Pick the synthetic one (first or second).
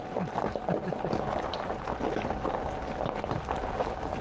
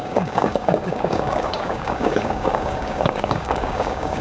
second